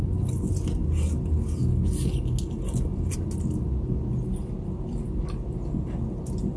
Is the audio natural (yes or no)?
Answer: yes